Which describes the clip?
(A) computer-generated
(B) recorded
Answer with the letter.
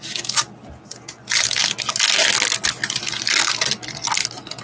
B